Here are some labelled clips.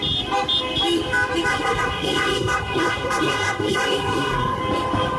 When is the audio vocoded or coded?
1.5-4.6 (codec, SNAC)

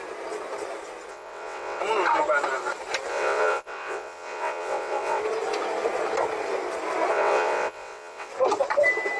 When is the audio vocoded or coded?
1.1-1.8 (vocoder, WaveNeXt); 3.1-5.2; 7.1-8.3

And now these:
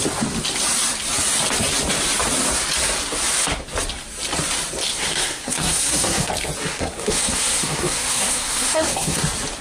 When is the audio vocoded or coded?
4.9-6.3 (codec, SNAC); 6.7-9.2

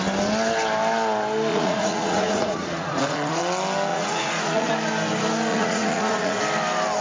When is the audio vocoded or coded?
1.5-3.4 (vocoder, Vocos); 3.9-4.7; 5.5-6.4

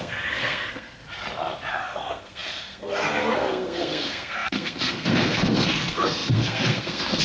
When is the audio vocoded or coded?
0.0-1.0 (codec, SNAC); 1.7-7.2

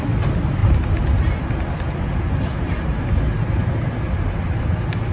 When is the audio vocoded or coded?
none